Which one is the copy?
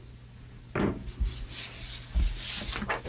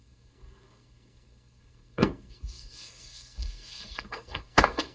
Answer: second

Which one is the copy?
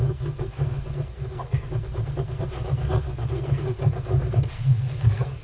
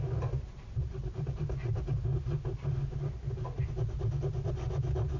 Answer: first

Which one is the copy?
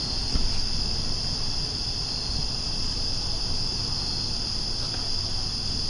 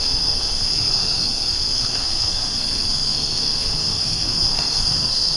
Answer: second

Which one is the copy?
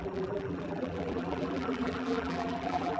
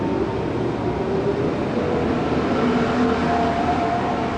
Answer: first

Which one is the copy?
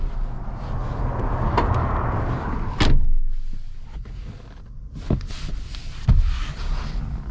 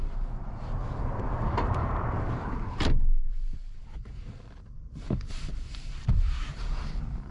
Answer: second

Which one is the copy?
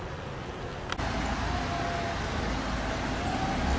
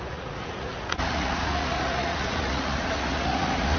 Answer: second